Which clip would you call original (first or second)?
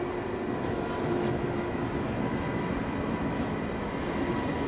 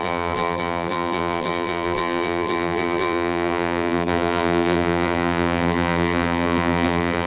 first